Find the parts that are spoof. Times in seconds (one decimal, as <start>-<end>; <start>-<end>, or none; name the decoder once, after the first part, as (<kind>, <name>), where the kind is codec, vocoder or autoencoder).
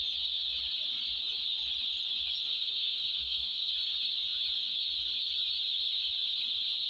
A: 2.5-3.7 (codec, SNAC)